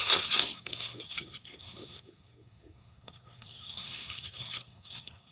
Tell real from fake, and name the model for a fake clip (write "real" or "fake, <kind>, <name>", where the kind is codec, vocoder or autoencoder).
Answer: fake, codec, SNAC